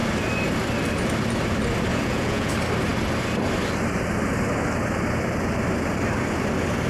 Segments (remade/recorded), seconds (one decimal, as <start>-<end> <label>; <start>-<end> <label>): 0.0-1.9 recorded; 1.9-2.5 remade; 2.5-6.9 recorded